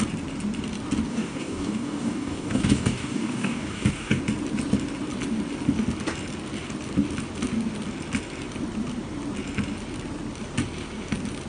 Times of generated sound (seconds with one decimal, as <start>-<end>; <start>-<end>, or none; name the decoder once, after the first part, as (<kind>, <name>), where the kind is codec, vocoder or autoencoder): 1.1-4.2 (codec, DAC)